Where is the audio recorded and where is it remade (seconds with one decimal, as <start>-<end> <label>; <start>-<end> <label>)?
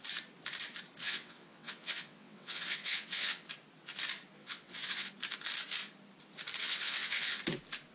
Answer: 0.0-1.0 recorded; 1.0-3.5 remade; 3.5-4.4 recorded; 4.4-5.1 remade; 5.1-6.6 recorded; 6.6-7.4 remade; 7.4-7.9 recorded